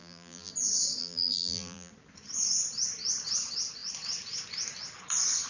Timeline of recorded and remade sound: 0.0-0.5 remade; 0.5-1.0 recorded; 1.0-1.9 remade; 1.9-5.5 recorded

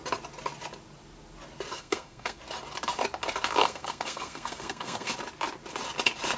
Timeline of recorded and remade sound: 0.0-1.7 recorded; 1.7-2.4 remade; 2.4-3.6 recorded; 3.6-5.1 remade; 5.1-6.4 recorded

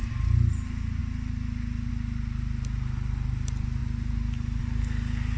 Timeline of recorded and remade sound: 0.0-5.4 recorded

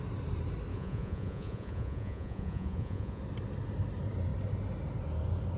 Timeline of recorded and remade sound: 0.0-0.7 recorded; 0.7-3.2 remade; 3.2-5.6 recorded

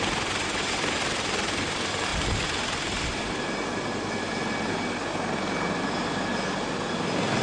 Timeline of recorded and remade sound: 0.0-7.4 recorded